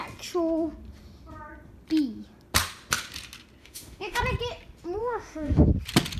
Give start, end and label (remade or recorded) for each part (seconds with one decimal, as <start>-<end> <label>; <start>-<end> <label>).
0.0-3.6 recorded; 3.6-4.2 remade; 4.2-5.0 recorded; 5.0-5.7 remade; 5.7-6.2 recorded